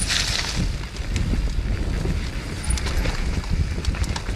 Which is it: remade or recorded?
recorded